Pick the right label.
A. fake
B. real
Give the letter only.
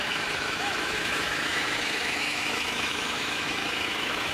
A